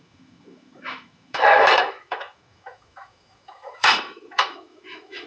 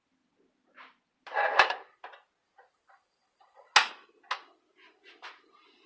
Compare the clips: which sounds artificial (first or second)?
first